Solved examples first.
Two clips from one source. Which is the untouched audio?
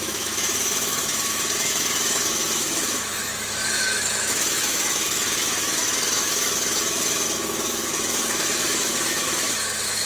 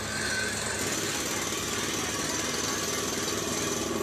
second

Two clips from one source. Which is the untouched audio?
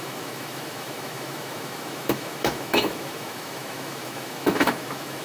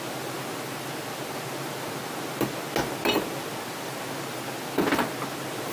second